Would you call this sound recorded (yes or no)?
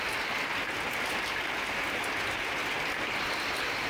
yes